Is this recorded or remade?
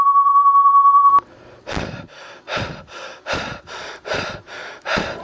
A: remade